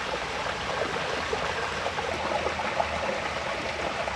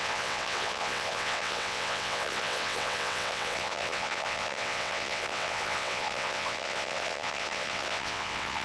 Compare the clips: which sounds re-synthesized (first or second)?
second